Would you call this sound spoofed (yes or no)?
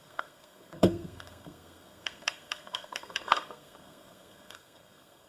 yes